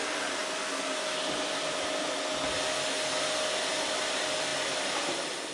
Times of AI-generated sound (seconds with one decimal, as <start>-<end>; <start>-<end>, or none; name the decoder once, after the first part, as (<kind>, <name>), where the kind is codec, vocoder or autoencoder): 0.0-0.4 (vocoder, BigVGAN v2); 3.7-5.5

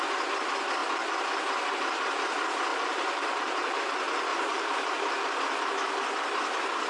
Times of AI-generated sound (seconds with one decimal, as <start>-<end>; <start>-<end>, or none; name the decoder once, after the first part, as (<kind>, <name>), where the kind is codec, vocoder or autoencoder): 2.7-3.8 (vocoder, BigVGAN v2); 4.3-4.9